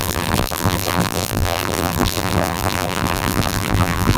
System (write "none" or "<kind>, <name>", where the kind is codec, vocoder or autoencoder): vocoder, BigVGAN v2